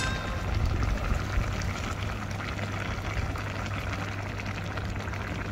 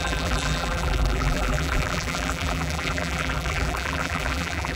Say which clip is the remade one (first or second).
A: second